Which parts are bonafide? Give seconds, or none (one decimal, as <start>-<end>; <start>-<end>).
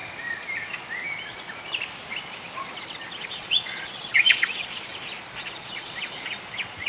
0.0-3.3; 4.9-5.4